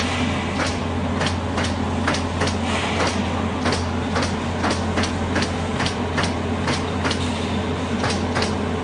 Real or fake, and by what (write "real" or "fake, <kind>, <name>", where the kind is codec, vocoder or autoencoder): real